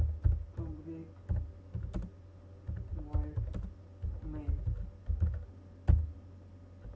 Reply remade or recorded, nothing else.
recorded